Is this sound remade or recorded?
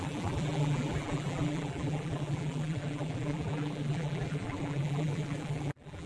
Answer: remade